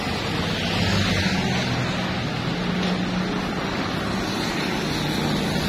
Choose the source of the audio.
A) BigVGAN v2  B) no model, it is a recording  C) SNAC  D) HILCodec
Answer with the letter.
B